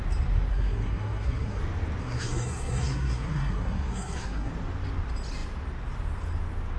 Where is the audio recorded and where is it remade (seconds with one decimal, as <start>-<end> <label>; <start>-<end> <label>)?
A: 0.0-0.5 recorded; 0.5-1.6 remade; 1.6-2.0 recorded; 2.0-4.5 remade; 4.5-6.8 recorded